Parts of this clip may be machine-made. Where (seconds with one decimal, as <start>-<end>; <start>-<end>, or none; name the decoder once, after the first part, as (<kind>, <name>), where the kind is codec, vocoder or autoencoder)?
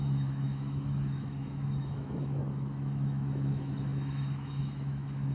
0.0-5.3 (autoencoder, DAC-VAE)